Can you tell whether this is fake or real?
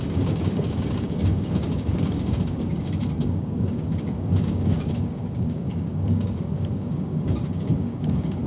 fake